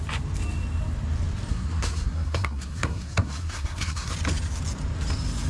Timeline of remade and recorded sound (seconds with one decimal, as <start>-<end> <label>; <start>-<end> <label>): 0.0-1.5 recorded; 1.5-4.1 remade; 4.1-5.5 recorded